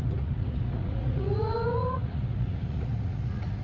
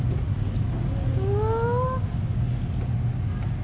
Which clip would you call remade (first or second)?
first